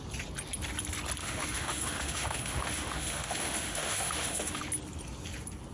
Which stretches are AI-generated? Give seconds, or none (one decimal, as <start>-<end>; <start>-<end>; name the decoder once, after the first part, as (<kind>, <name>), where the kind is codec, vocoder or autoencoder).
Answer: 1.2-4.6 (autoencoder, DAC-VAE)